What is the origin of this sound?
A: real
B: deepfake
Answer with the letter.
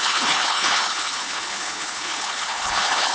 B